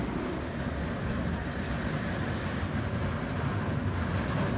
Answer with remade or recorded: recorded